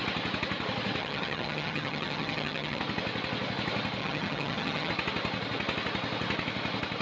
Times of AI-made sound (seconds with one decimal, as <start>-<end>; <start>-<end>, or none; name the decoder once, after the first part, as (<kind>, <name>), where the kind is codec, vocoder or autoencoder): 1.0-2.8 (vocoder, HiFi-GAN); 4.0-4.9